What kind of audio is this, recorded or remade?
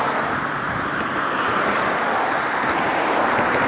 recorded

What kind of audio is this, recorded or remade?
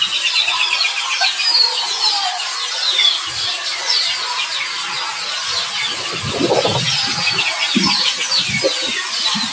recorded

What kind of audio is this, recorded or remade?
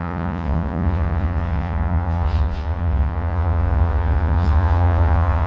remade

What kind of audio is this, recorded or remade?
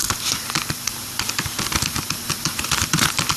remade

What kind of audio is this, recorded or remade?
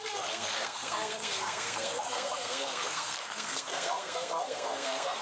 remade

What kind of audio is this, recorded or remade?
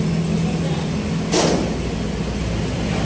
recorded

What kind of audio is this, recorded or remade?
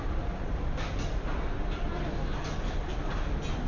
recorded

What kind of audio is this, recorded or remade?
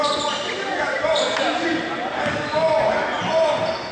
recorded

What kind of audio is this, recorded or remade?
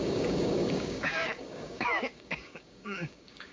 remade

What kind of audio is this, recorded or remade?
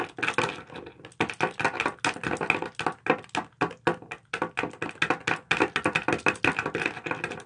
recorded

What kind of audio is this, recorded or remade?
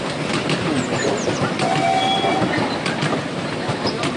recorded